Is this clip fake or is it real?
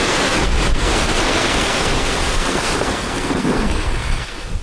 fake